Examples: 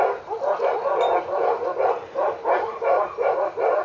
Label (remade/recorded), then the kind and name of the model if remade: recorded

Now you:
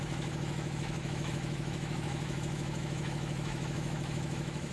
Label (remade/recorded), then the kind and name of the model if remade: remade, autoencoder, DAC-VAE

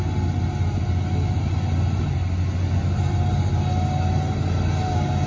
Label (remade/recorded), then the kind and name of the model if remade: recorded